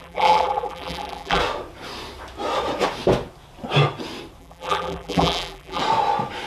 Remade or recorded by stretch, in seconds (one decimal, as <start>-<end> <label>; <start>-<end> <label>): 0.0-1.4 remade; 1.4-4.4 recorded; 4.4-5.8 remade; 5.8-6.5 recorded

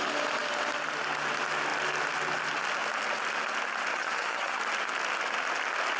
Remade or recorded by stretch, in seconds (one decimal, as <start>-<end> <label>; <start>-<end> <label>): 0.0-3.9 recorded; 3.9-4.6 remade; 4.6-6.0 recorded

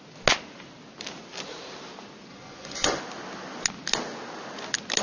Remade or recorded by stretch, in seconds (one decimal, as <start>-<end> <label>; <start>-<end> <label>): 0.0-2.3 recorded; 2.3-3.0 remade; 3.0-5.0 recorded

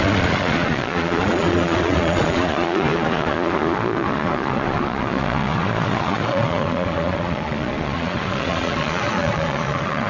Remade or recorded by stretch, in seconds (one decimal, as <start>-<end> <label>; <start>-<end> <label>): 0.0-10.1 remade